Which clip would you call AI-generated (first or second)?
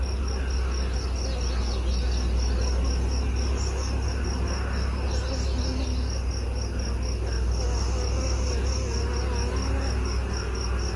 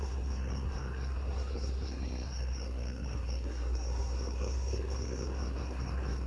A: second